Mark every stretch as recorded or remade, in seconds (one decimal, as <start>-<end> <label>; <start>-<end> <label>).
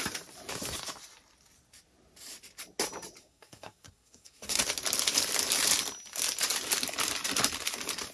0.0-3.2 recorded; 3.2-4.6 remade; 4.6-8.1 recorded